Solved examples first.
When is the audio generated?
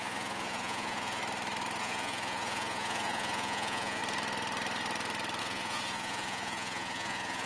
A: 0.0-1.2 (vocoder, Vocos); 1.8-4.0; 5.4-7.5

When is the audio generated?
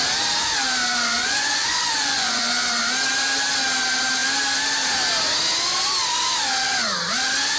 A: 1.2-2.5 (vocoder, Vocos)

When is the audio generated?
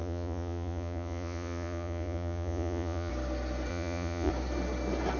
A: 0.0-3.1 (vocoder, Vocos); 3.7-4.3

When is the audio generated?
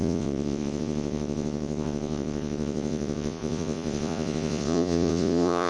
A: 0.0-5.7 (vocoder, Vocos)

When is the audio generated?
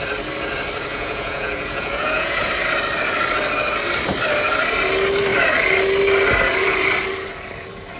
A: 0.9-2.5 (vocoder, Vocos)